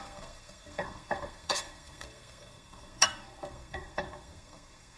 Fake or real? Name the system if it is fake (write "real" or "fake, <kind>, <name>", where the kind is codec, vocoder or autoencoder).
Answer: fake, codec, SNAC